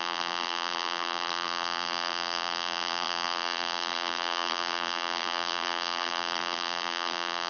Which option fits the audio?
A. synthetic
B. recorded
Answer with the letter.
A